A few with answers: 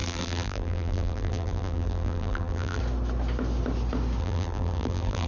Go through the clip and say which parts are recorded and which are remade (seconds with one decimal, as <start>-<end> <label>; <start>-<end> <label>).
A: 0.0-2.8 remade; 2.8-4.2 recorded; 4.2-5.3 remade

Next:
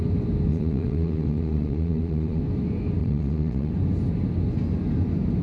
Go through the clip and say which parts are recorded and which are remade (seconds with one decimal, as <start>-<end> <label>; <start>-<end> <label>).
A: 0.0-0.5 recorded; 0.5-2.4 remade; 2.4-3.0 recorded; 3.0-3.7 remade; 3.7-5.4 recorded

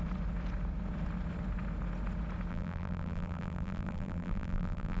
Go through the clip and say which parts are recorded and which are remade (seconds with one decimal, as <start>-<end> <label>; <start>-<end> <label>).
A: 0.0-2.5 recorded; 2.5-5.0 remade

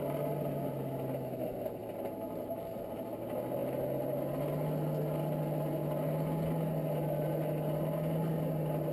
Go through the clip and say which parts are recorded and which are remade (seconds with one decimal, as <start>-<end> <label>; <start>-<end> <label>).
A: 0.0-8.9 recorded

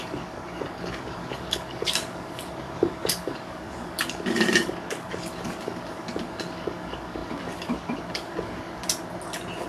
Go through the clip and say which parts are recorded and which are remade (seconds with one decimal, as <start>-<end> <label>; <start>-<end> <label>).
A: 0.0-8.8 remade; 8.8-9.7 recorded

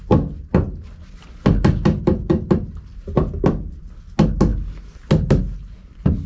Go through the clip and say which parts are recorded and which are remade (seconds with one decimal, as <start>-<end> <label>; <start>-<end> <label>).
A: 0.0-6.3 recorded

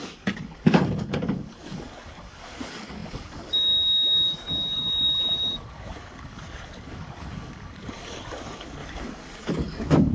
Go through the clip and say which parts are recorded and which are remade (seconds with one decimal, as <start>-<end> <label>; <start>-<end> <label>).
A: 0.0-10.1 remade

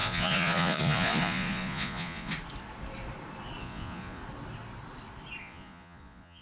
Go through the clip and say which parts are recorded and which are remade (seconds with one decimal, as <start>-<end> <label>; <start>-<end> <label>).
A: 0.0-2.3 remade; 2.3-3.6 recorded; 3.6-4.2 remade; 4.2-5.4 recorded; 5.4-6.4 remade